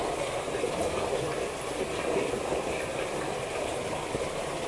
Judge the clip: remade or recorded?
recorded